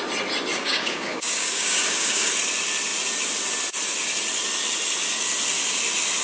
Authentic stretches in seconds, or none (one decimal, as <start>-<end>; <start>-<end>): 0.0-0.5; 2.3-6.2